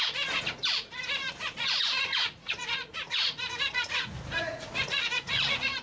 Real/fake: fake